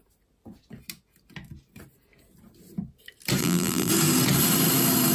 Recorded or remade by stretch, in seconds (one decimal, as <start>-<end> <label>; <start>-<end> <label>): 0.0-3.4 recorded; 3.4-3.9 remade; 3.9-5.1 recorded